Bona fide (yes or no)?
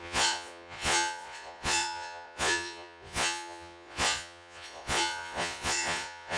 no